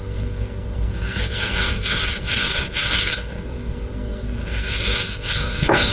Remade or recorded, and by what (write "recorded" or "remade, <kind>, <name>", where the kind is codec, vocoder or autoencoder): remade, codec, SNAC